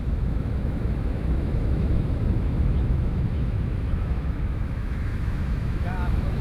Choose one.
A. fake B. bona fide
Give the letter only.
A